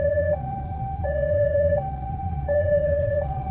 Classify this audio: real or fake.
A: fake